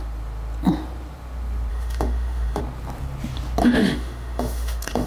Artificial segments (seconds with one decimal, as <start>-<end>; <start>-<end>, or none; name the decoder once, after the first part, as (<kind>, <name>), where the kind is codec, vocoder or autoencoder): 1.7-2.6 (autoencoder, DAC-VAE); 3.6-5.1